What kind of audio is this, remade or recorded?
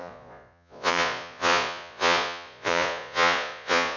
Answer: remade